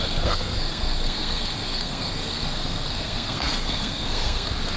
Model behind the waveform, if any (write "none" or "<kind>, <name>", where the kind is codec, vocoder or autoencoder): codec, SNAC